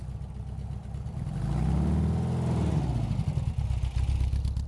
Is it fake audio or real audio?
real